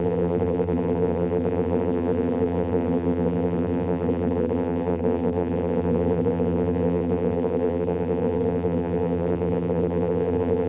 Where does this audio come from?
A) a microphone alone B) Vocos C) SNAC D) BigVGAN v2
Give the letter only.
D